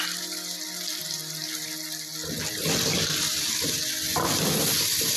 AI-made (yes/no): no